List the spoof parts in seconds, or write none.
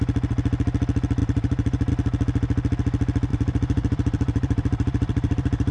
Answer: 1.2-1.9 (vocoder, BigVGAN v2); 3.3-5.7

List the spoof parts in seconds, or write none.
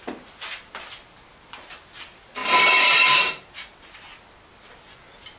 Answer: 2.4-3.5 (vocoder, BigVGAN v2)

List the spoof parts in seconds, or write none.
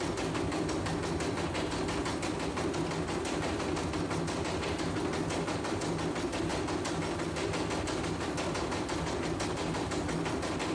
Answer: none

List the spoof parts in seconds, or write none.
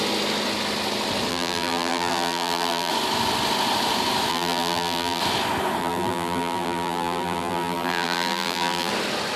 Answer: 1.3-2.9 (vocoder, BigVGAN v2); 4.3-5.2; 5.8-8.9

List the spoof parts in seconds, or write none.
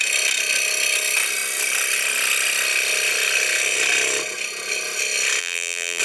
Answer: 5.4-6.0 (vocoder, BigVGAN v2)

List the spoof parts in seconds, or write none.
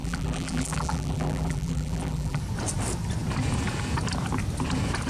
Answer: 0.0-2.4 (vocoder, BigVGAN v2)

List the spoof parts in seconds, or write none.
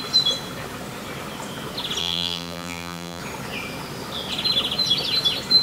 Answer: 2.0-3.2 (vocoder, BigVGAN v2)